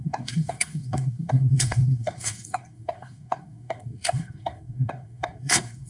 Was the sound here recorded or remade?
remade